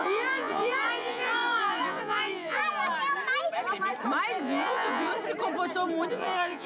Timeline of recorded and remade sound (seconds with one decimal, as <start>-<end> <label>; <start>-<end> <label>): 0.0-2.6 remade; 2.6-4.4 recorded; 4.4-5.1 remade; 5.1-6.1 recorded; 6.1-6.7 remade